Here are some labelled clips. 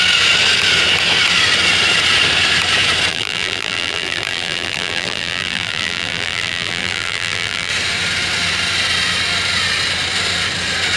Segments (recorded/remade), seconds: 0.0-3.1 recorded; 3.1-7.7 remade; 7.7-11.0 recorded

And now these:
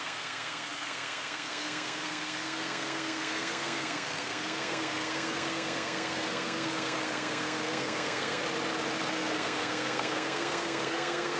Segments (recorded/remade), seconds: 0.0-8.4 remade; 8.4-9.1 recorded; 9.1-11.4 remade